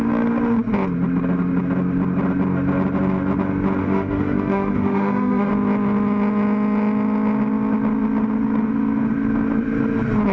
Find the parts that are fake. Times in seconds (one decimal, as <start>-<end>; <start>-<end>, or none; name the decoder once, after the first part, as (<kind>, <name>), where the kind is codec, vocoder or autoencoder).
3.8-5.5 (autoencoder, DAC-VAE)